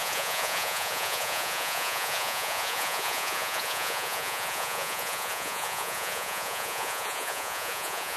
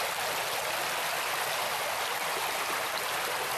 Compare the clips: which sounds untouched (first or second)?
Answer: second